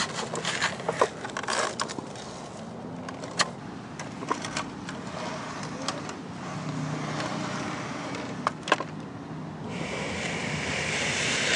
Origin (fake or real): real